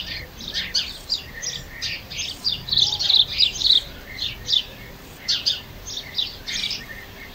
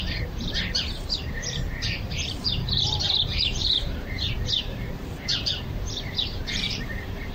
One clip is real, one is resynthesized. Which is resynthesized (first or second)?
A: second